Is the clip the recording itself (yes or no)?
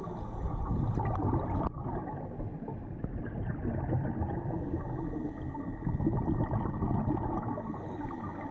yes